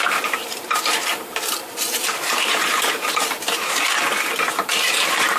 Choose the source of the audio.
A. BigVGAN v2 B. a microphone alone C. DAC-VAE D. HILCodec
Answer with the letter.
A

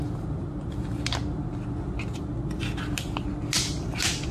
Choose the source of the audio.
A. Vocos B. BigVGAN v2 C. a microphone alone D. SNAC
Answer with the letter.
C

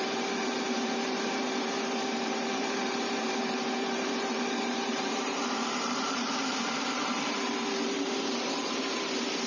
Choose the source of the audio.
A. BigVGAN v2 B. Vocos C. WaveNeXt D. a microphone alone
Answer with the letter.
A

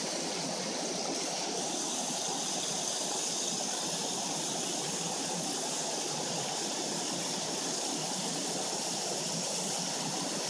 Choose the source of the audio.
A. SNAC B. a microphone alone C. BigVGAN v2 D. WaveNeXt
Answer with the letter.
C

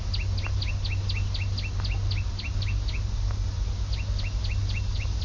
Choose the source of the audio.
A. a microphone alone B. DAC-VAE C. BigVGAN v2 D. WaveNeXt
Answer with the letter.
A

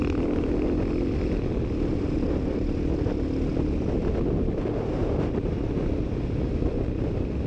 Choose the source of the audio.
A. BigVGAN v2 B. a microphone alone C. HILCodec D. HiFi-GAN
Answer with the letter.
B